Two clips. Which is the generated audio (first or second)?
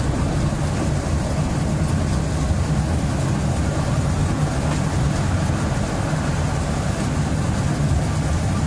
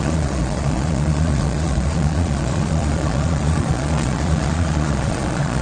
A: second